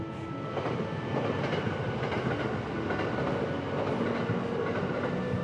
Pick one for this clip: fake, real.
real